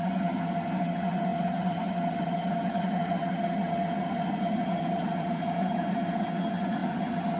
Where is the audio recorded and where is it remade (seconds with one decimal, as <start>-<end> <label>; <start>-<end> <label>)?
0.0-7.4 remade